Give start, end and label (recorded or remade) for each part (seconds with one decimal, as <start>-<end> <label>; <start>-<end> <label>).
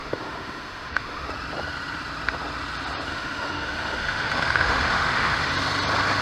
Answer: 0.0-1.3 remade; 1.3-3.1 recorded; 3.1-5.5 remade; 5.5-6.2 recorded